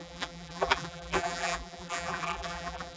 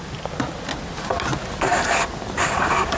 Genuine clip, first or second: second